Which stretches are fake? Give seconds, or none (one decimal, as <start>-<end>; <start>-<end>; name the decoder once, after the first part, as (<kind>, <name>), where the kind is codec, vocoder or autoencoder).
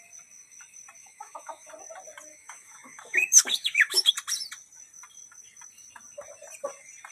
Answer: 1.0-1.7 (autoencoder, DAC-VAE); 2.3-4.1